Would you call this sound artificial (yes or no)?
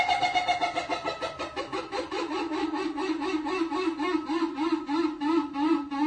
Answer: no